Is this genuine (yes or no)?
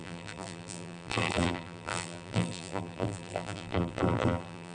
no